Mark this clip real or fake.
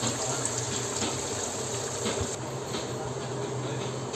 real